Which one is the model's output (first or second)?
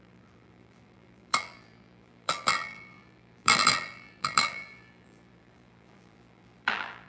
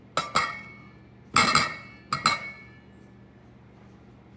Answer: first